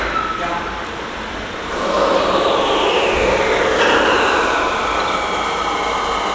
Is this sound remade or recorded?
recorded